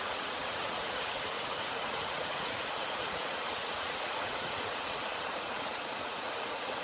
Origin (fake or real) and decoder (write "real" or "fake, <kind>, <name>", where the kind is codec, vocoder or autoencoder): fake, vocoder, Vocos